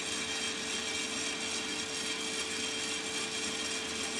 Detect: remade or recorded recorded